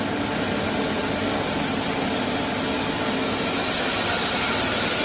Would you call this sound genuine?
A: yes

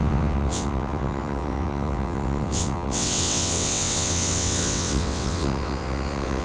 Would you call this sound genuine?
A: no